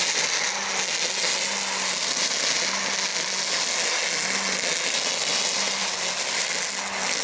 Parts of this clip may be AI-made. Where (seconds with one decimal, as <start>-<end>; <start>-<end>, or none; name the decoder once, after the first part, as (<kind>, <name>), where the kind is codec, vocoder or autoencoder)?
none